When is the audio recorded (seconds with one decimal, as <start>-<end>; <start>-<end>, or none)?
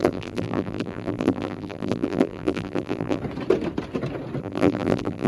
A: 3.2-4.4